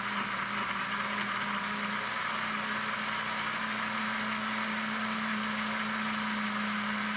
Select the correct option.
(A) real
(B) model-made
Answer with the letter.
A